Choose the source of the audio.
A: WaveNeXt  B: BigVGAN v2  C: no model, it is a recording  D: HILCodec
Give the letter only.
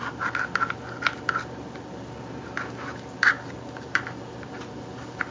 C